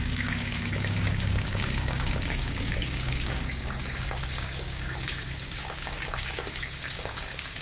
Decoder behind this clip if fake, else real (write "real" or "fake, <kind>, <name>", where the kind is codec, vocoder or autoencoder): fake, codec, DAC